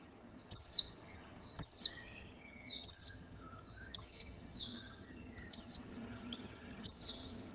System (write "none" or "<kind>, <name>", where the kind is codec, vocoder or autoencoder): vocoder, HiFi-GAN